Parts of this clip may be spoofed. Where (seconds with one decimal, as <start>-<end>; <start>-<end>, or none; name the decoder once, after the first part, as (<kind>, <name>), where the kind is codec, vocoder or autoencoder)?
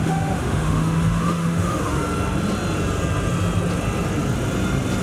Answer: 0.0-2.0 (autoencoder, DAC-VAE)